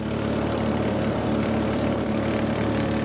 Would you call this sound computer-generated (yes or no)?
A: yes